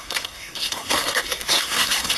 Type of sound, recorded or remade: remade